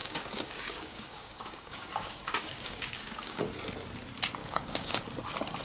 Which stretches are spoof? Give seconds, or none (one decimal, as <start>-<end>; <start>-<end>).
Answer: 0.0-3.4; 4.4-5.0